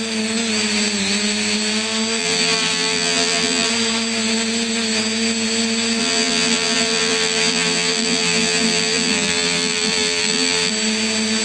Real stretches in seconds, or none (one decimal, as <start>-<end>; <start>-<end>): 0.0-2.2; 3.7-6.0; 10.7-11.4